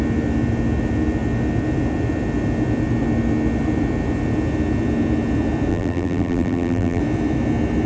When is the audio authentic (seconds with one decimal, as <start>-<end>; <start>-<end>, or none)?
0.0-5.7; 7.0-7.9